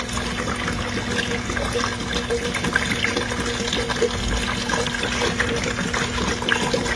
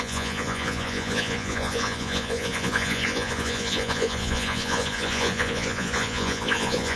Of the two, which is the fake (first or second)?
second